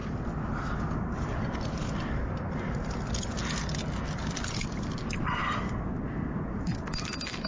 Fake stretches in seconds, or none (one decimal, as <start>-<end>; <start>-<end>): none